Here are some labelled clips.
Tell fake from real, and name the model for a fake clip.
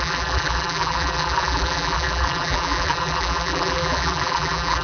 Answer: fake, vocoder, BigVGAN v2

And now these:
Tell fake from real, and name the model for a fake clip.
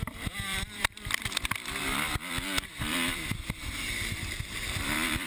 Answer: fake, vocoder, BigVGAN v2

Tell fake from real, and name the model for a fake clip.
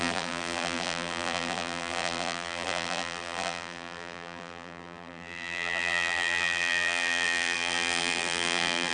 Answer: fake, vocoder, BigVGAN v2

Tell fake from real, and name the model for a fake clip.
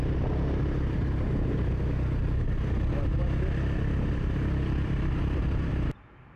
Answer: real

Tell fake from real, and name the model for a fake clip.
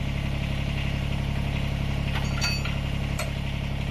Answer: real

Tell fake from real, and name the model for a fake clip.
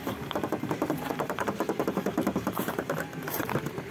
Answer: fake, vocoder, BigVGAN v2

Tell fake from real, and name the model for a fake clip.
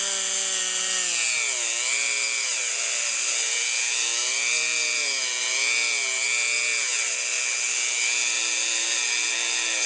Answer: real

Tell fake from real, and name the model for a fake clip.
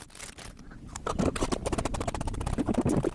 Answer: fake, vocoder, BigVGAN v2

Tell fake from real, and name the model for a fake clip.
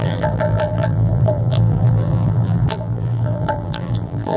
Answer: fake, vocoder, BigVGAN v2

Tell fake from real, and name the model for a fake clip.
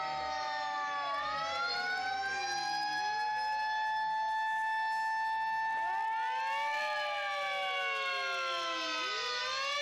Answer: real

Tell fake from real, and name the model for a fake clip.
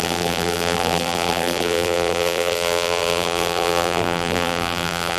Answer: fake, vocoder, BigVGAN v2